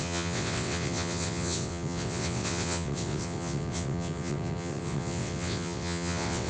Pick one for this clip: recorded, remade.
remade